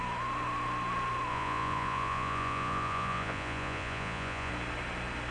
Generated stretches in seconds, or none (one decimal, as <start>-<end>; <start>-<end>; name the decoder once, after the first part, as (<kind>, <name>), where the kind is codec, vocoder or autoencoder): 1.3-4.5 (vocoder, Vocos)